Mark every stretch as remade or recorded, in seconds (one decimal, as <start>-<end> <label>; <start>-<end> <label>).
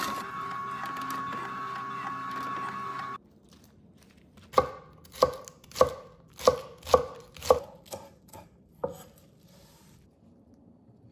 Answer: 0.0-11.1 recorded